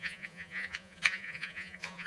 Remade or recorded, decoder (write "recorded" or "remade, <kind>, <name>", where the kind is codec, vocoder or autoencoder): remade, vocoder, Vocos